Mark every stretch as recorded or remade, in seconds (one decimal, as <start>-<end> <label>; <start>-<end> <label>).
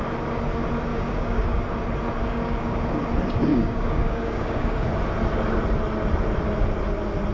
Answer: 0.0-0.9 recorded; 0.9-1.6 remade; 1.6-2.2 recorded; 2.2-3.0 remade; 3.0-3.5 recorded; 3.5-4.9 remade; 4.9-7.3 recorded